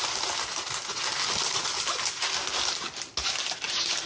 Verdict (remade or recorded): recorded